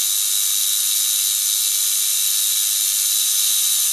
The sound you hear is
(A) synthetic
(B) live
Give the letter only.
B